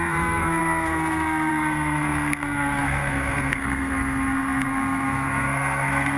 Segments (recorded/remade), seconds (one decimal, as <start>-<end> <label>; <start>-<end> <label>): 0.0-6.2 remade